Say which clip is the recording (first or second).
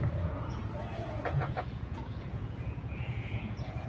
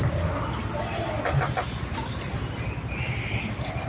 second